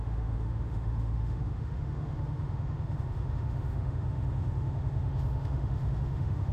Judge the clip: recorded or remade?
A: remade